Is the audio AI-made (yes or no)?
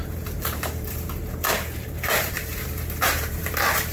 yes